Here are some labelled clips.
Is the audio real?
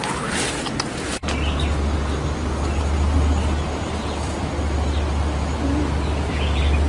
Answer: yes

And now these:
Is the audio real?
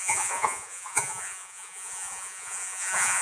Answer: no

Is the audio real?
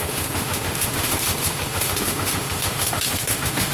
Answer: no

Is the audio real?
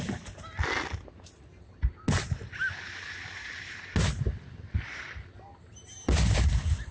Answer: yes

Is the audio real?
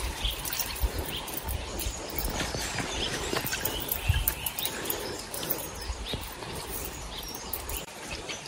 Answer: no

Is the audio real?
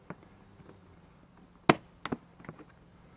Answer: yes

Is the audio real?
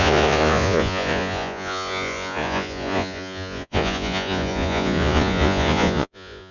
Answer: no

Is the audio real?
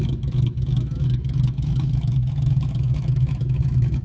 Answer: no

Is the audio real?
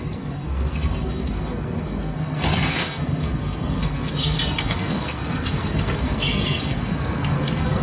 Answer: no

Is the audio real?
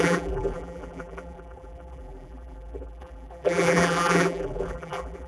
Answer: no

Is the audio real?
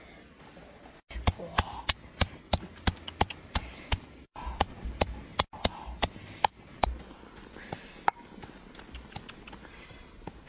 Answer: yes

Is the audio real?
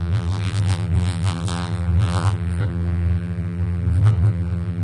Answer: no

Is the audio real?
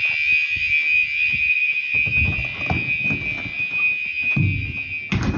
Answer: yes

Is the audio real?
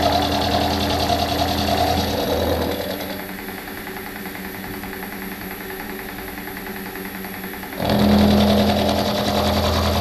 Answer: yes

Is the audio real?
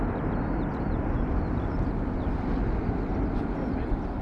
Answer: yes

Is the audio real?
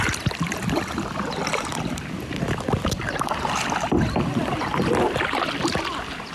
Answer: no